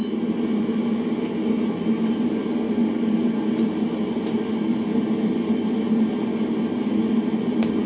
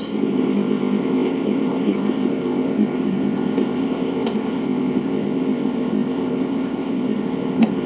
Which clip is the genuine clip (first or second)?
first